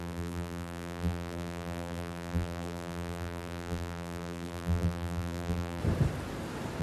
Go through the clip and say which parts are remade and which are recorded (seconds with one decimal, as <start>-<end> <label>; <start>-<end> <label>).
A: 0.0-5.8 remade; 5.8-6.8 recorded